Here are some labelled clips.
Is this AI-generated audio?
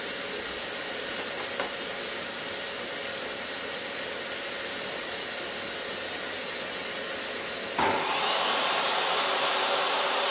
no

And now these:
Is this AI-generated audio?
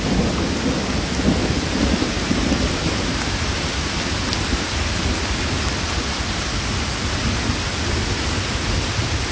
no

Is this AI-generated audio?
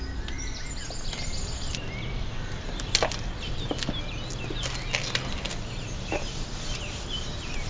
no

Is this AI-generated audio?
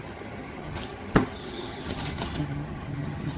yes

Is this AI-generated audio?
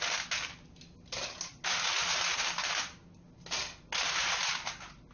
no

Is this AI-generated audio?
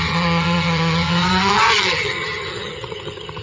yes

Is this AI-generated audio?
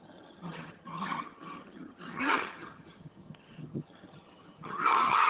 yes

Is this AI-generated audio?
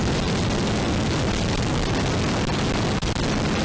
no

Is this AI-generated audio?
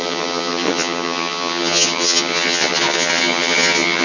yes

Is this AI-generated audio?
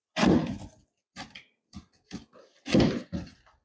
no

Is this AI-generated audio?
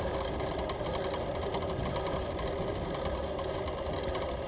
no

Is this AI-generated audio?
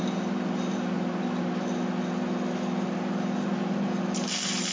no